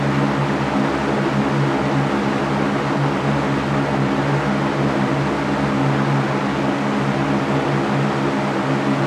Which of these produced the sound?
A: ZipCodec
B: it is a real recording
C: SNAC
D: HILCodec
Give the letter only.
B